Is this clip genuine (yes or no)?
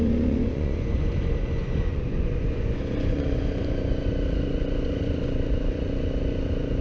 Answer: no